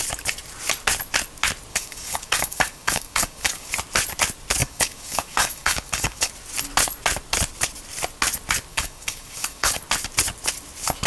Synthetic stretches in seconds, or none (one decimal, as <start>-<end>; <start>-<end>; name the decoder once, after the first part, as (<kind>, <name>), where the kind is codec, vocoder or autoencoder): 1.7-3.7 (codec, DAC); 4.6-6.3; 8.7-9.8